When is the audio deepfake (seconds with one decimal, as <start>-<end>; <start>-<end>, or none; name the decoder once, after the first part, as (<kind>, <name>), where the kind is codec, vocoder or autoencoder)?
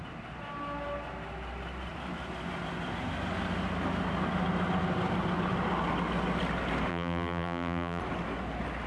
6.9-8.0 (vocoder, BigVGAN v2)